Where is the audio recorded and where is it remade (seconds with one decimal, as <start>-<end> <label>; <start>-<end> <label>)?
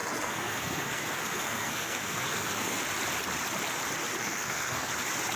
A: 0.0-2.8 remade; 2.8-4.2 recorded; 4.2-4.9 remade; 4.9-5.4 recorded